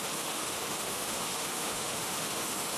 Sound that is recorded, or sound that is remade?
remade